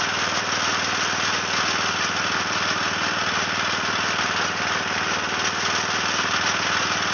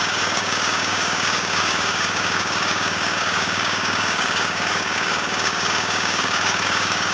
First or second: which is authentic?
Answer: first